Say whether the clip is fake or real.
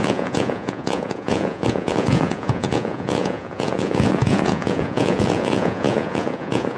fake